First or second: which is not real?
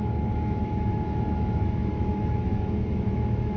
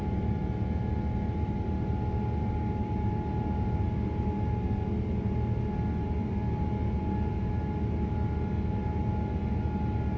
first